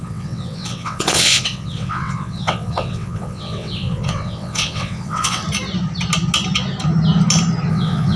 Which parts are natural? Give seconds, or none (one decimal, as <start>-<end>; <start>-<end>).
5.4-7.7